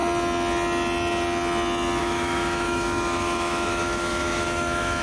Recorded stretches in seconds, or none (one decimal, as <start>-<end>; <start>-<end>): 0.0-2.0